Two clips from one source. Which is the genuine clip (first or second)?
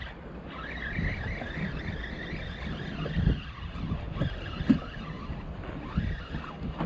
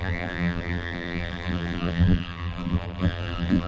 first